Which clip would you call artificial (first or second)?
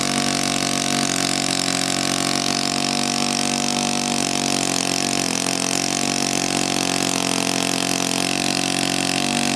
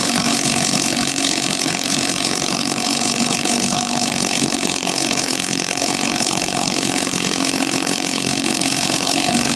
second